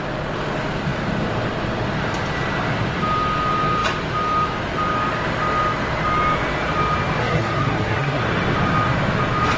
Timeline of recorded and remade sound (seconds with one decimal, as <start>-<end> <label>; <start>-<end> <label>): 0.0-7.2 recorded; 7.2-8.2 remade; 8.2-9.6 recorded